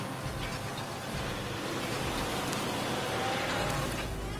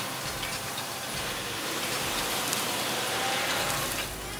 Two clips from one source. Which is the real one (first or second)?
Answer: first